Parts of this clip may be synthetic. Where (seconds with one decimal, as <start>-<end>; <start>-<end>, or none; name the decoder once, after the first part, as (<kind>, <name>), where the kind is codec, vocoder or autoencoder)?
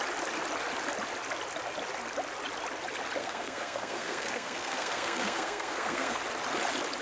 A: 3.2-6.2 (codec, SNAC)